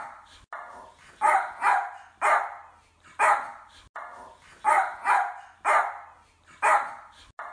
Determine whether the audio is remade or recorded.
recorded